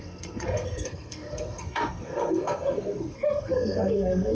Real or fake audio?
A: fake